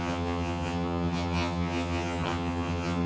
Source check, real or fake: fake